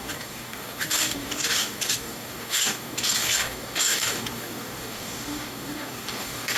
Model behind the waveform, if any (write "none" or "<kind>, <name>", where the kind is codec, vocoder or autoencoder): codec, DAC